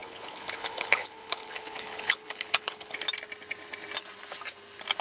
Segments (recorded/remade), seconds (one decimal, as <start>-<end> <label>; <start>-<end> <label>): 0.0-3.0 remade; 3.0-5.0 recorded